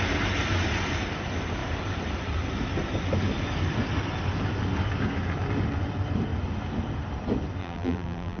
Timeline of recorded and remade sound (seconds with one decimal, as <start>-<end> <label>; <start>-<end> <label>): 0.0-7.6 recorded; 7.6-8.4 remade